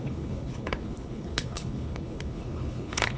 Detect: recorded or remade remade